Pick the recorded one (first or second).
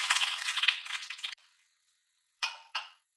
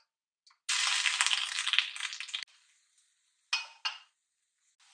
second